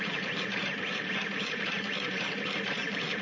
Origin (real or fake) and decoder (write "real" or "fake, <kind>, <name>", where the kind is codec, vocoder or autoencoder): fake, vocoder, BigVGAN v2